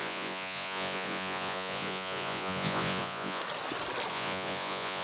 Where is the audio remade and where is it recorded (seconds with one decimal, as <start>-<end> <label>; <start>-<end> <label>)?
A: 0.0-3.4 remade; 3.4-4.1 recorded; 4.1-5.0 remade